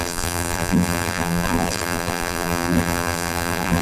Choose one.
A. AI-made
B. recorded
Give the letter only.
A